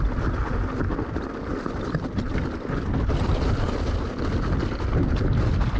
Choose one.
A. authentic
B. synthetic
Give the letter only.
A